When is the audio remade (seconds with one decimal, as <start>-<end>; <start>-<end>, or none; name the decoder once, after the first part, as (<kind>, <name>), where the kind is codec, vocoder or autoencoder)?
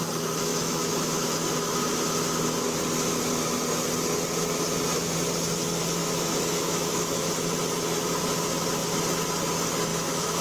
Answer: 0.5-1.8 (autoencoder, DAC-VAE); 6.0-7.3; 9.9-10.4